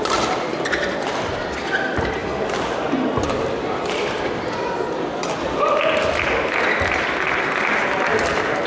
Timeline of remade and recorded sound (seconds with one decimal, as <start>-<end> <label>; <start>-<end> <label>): 0.0-8.7 recorded